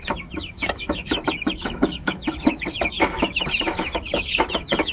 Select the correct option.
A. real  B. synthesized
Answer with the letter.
B